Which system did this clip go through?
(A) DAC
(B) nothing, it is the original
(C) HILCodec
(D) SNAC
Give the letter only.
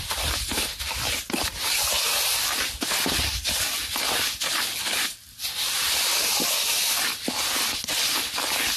B